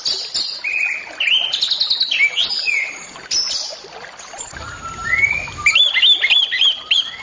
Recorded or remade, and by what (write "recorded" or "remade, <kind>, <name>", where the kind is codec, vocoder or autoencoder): recorded